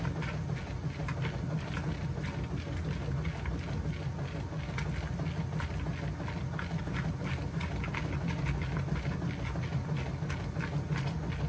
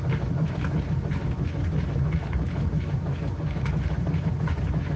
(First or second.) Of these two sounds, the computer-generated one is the second